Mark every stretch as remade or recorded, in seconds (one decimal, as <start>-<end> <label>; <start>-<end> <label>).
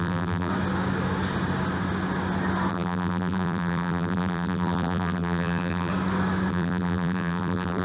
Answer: 0.0-0.5 remade; 0.5-2.7 recorded; 2.7-5.9 remade; 5.9-6.5 recorded; 6.5-7.8 remade